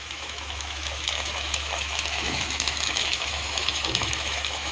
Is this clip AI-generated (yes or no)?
yes